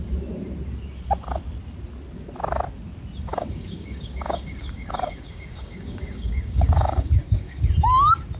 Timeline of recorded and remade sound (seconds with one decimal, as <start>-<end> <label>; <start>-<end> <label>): 0.0-3.3 recorded; 3.3-7.6 remade; 7.6-8.4 recorded